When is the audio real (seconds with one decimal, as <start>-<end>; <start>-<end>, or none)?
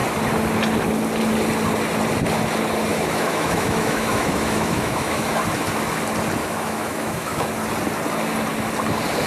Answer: 0.0-2.9; 5.3-6.4; 7.5-9.3